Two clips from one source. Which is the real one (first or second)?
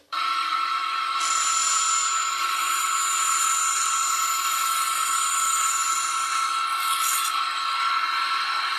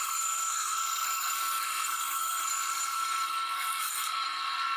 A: first